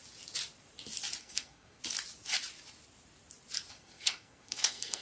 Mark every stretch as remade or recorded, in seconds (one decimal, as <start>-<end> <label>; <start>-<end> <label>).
0.0-1.2 recorded; 1.2-1.8 remade; 1.8-3.7 recorded; 3.7-5.0 remade